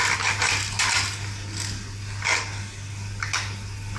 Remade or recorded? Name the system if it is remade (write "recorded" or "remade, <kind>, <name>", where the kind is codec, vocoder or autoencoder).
recorded